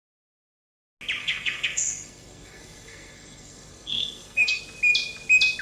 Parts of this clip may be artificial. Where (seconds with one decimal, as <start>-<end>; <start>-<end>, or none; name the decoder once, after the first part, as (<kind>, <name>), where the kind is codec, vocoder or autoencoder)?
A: 1.2-4.6 (codec, SNAC)